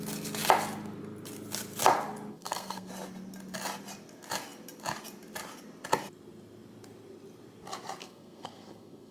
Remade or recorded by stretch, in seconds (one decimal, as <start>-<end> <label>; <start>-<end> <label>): 0.0-2.3 recorded; 2.3-2.9 remade; 2.9-8.0 recorded; 8.0-9.1 remade